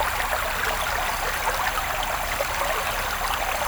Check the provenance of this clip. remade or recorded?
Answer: recorded